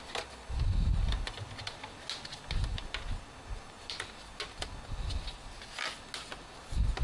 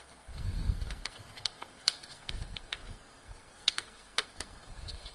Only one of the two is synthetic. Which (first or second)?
second